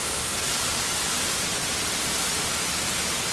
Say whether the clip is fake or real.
real